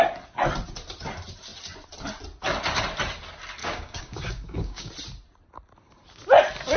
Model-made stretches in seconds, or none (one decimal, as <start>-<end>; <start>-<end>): 3.6-4.9